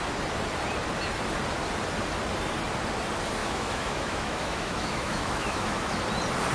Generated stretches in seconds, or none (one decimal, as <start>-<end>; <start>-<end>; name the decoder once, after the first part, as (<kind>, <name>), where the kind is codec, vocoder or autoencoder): 3.4-6.0 (autoencoder, DAC-VAE)